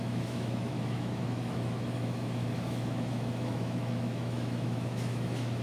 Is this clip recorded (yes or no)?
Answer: no